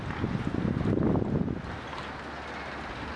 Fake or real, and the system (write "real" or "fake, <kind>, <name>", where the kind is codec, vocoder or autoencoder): real